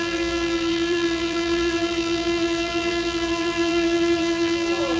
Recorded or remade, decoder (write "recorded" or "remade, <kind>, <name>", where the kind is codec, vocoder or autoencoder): remade, vocoder, BigVGAN v2